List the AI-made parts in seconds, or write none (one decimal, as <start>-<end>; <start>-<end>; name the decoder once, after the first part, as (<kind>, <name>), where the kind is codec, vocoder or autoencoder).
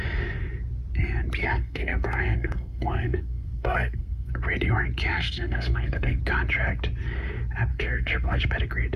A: 1.4-4.3 (codec, SNAC); 5.1-6.2; 7.7-8.4